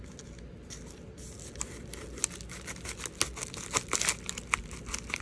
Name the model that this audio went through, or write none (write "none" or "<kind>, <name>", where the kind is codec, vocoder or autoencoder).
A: none